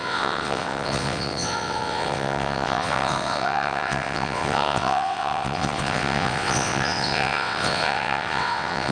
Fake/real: fake